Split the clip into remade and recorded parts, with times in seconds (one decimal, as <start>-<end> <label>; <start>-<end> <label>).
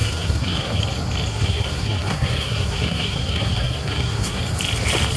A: 0.0-0.8 remade; 0.8-1.3 recorded; 1.3-4.4 remade; 4.4-5.2 recorded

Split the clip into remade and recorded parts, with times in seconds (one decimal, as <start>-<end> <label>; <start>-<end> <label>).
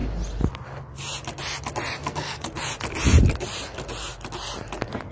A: 0.0-2.0 recorded; 2.0-2.6 remade; 2.6-5.1 recorded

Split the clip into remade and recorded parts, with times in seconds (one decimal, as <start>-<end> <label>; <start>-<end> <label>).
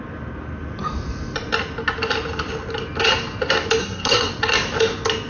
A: 0.0-3.8 recorded; 3.8-4.3 remade; 4.3-5.3 recorded